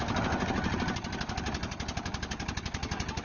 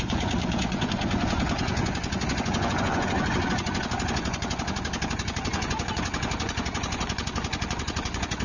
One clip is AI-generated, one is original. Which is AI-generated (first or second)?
second